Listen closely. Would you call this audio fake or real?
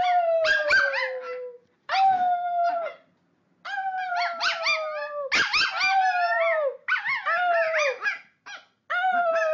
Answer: real